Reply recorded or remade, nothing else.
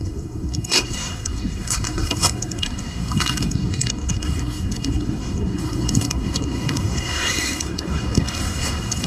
remade